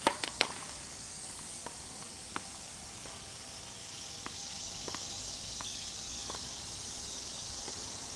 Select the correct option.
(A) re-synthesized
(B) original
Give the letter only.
A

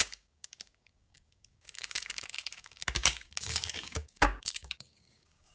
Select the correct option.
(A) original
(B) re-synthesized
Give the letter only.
B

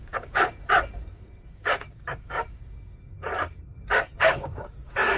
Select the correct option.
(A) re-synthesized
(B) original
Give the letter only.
A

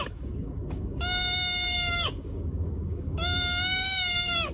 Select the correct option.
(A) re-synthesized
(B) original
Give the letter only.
A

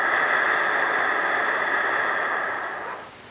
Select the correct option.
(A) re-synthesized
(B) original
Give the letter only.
B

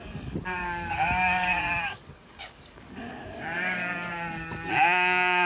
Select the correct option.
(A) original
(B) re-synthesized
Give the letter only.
B